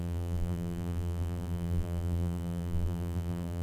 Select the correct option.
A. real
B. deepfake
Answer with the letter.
B